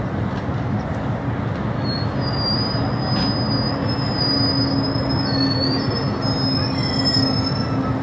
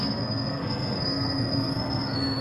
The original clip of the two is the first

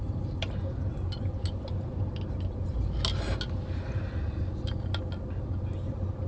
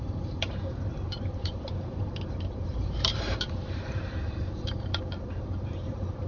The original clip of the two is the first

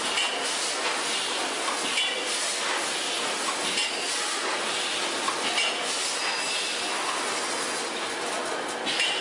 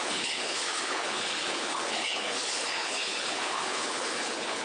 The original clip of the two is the first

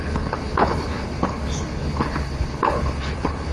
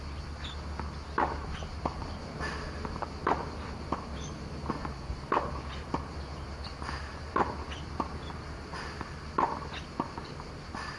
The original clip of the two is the second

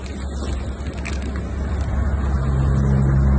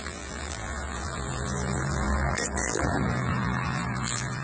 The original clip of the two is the first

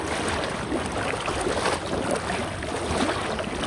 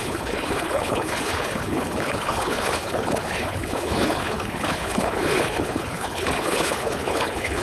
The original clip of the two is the first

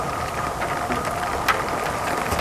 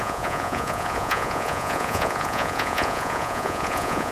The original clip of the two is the first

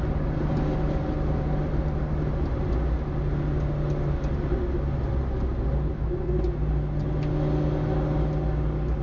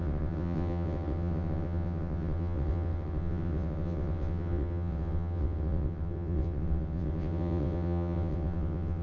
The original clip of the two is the first